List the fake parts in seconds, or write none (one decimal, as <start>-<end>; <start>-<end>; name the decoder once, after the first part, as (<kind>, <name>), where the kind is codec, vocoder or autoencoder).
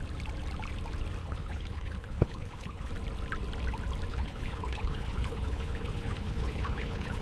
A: 1.2-2.9 (codec, HILCodec); 4.1-7.2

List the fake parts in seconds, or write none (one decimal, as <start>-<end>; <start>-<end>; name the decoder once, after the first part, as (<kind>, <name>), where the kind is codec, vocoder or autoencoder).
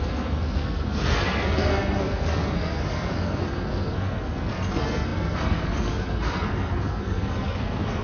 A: 0.0-8.0 (codec, SNAC)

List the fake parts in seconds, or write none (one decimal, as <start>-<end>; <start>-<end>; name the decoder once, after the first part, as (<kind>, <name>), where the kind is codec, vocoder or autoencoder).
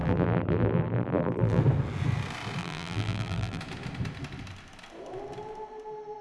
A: 0.0-1.6 (vocoder, BigVGAN v2); 2.6-3.6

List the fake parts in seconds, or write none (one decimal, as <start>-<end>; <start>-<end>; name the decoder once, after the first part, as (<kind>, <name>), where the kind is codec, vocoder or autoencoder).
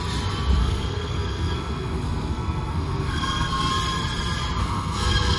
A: 0.6-3.7 (codec, SNAC); 4.6-5.4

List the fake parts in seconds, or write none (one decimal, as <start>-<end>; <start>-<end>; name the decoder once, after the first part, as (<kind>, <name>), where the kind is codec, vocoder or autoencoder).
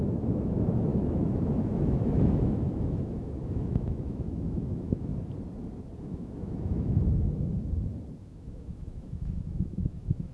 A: 0.0-5.1 (autoencoder, DAC-VAE); 6.0-7.5; 8.2-10.3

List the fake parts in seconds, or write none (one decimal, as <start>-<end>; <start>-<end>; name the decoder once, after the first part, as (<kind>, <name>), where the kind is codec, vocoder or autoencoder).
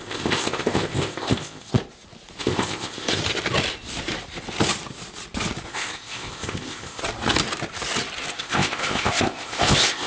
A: 0.0-1.7 (codec, ZipCodec); 2.4-3.2; 5.7-7.0; 8.3-10.1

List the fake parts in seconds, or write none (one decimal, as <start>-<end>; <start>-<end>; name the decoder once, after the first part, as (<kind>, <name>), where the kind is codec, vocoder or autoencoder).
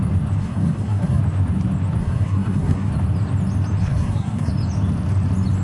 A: 0.4-1.2 (codec, SNAC); 2.0-2.9; 3.8-4.5